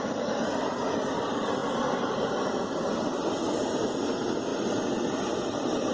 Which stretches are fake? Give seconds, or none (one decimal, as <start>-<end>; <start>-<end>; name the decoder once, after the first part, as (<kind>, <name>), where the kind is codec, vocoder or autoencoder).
none